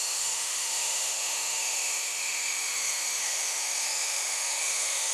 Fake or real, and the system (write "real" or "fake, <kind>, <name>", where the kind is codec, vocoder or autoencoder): fake, autoencoder, DAC-VAE